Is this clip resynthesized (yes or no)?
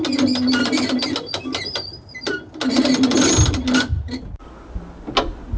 no